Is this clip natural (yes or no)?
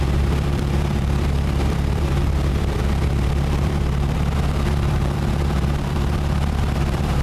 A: no